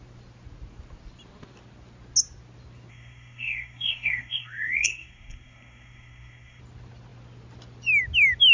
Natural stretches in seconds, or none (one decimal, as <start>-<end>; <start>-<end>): 0.0-2.9; 6.6-8.5